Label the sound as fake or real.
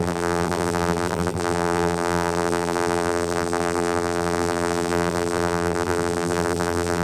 fake